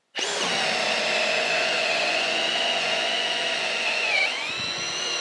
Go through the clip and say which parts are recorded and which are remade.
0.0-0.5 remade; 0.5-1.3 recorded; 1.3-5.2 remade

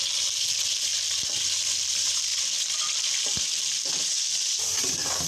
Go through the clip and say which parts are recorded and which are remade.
0.0-5.3 recorded

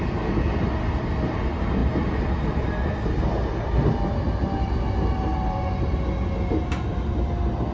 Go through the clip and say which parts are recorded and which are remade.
0.0-7.7 recorded

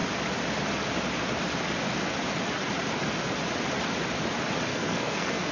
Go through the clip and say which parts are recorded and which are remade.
0.0-4.7 recorded; 4.7-5.5 remade

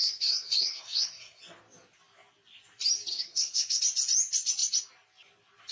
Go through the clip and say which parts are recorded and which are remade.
0.0-1.4 remade; 1.4-3.1 recorded; 3.1-3.8 remade; 3.8-5.7 recorded

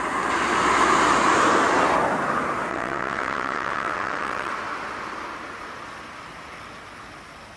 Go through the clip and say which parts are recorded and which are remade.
0.0-2.7 recorded; 2.7-4.5 remade; 4.5-7.6 recorded

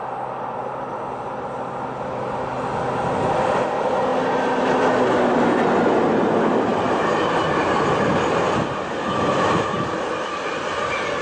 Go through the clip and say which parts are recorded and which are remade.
0.0-11.2 recorded

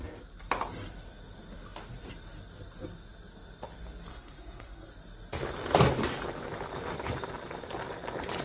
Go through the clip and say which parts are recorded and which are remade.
0.0-4.1 recorded; 4.1-4.9 remade; 4.9-8.4 recorded